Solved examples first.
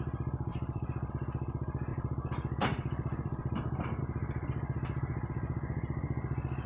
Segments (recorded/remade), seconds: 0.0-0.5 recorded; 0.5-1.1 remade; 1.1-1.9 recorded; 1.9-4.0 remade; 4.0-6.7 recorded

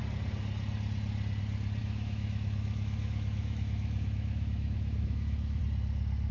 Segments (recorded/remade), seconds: 0.0-1.8 recorded; 1.8-5.6 remade; 5.6-6.3 recorded

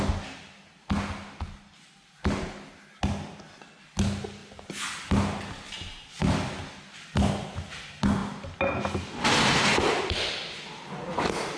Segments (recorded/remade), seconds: 0.0-11.6 recorded

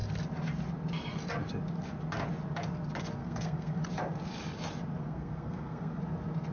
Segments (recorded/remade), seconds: 0.0-3.2 recorded; 3.2-3.8 remade; 3.8-5.0 recorded; 5.0-6.0 remade; 6.0-6.5 recorded